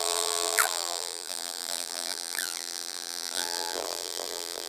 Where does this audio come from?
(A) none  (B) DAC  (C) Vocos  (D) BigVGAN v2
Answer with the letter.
D